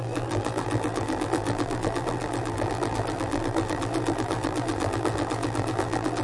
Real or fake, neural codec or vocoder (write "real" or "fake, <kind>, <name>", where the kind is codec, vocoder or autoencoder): fake, vocoder, BigVGAN v2